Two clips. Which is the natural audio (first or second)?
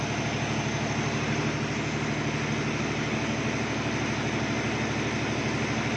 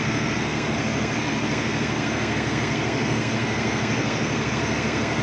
first